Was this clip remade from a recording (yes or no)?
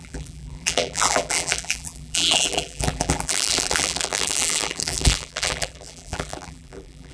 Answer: yes